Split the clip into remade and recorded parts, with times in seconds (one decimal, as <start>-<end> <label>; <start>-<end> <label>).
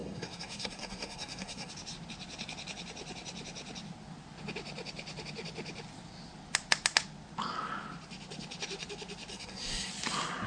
0.0-1.7 remade; 1.7-9.3 recorded; 9.3-9.9 remade; 9.9-10.5 recorded